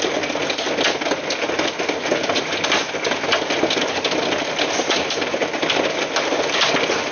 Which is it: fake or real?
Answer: real